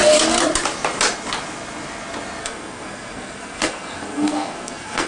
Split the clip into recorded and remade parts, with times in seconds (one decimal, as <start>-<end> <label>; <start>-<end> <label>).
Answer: 0.0-2.4 recorded; 2.4-5.1 remade

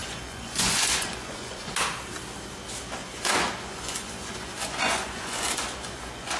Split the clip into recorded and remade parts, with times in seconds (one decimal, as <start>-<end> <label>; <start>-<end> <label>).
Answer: 0.0-1.7 remade; 1.7-3.0 recorded; 3.0-6.4 remade

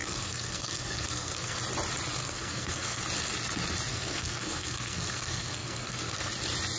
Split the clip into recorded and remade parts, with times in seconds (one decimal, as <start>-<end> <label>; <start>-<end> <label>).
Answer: 0.0-1.6 remade; 1.6-2.2 recorded; 2.2-3.0 remade; 3.0-3.9 recorded; 3.9-6.3 remade; 6.3-6.8 recorded

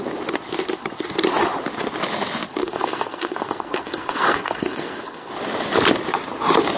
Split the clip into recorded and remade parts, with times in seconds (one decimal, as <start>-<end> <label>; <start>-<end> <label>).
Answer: 0.0-2.6 recorded; 2.6-5.3 remade; 5.3-6.8 recorded

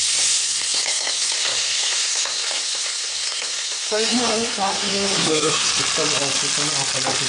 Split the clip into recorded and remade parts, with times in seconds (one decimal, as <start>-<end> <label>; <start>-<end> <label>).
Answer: 0.0-5.7 remade; 5.7-7.3 recorded

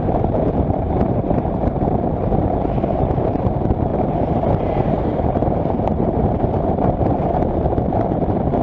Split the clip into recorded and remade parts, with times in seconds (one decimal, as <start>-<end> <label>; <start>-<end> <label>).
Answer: 0.0-8.6 remade

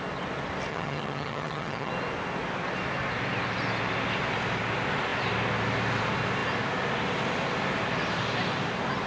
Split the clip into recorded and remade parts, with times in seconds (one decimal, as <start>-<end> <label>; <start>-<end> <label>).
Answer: 0.0-0.7 recorded; 0.7-1.9 remade; 1.9-9.1 recorded

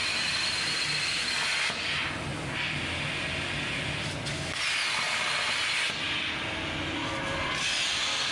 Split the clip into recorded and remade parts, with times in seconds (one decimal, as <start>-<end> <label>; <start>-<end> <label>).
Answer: 0.0-8.3 recorded